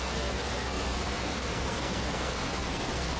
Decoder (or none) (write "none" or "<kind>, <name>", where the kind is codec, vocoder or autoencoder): codec, SNAC